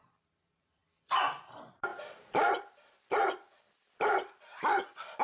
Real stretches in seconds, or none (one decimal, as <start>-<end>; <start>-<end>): 0.8-1.4; 1.9-5.2